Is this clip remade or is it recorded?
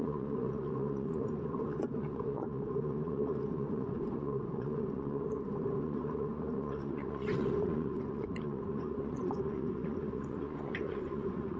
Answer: remade